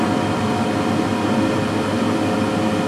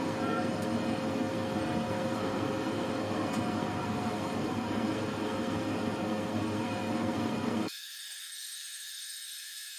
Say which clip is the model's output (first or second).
second